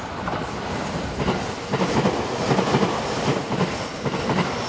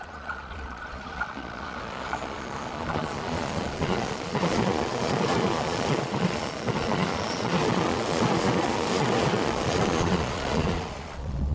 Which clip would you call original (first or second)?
first